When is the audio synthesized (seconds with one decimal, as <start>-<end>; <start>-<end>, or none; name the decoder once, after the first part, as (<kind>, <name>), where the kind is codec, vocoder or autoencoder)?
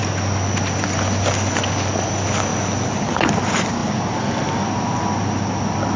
none